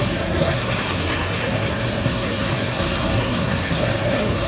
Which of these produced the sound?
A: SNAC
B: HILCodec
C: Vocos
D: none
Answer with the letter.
A